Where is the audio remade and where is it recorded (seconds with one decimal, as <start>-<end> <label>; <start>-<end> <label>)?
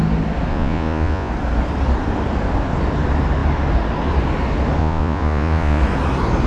0.0-0.5 recorded; 0.5-1.3 remade; 1.3-4.8 recorded; 4.8-5.8 remade; 5.8-6.5 recorded